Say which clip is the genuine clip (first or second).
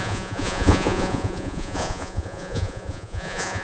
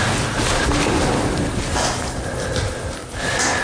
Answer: second